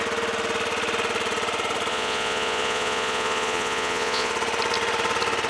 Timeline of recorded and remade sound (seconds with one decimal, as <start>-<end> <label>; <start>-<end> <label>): 0.0-1.9 recorded; 1.9-4.3 remade; 4.3-5.5 recorded